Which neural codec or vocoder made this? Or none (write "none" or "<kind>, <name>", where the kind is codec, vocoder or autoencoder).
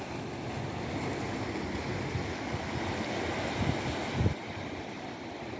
none